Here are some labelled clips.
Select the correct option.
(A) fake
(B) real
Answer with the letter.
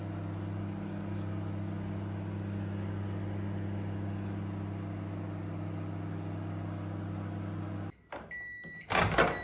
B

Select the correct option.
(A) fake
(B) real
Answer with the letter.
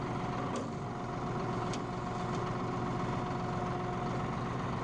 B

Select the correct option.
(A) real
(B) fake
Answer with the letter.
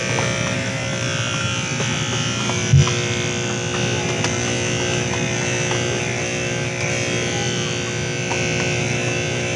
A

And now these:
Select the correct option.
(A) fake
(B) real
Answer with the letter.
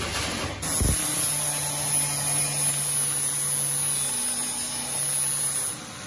B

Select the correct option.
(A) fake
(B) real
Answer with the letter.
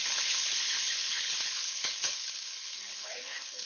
A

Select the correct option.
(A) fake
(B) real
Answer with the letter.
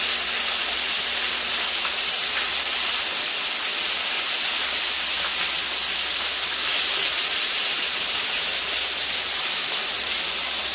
B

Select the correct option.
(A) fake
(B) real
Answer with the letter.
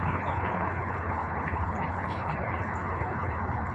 A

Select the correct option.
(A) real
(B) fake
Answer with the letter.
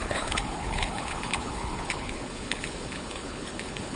B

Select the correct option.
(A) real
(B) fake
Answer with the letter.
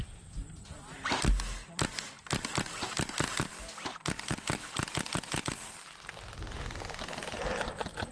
A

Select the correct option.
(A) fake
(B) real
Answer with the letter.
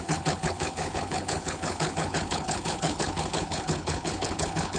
A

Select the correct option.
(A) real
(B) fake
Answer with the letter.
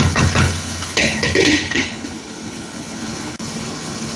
B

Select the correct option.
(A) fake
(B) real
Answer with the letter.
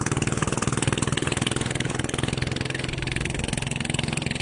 A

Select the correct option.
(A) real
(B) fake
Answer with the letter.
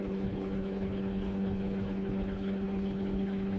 B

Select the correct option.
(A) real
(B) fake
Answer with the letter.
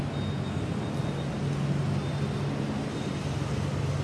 A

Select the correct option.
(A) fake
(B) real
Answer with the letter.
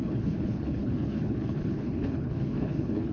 A